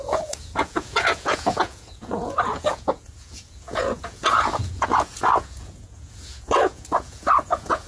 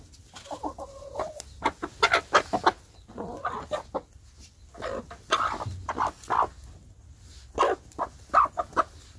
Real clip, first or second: second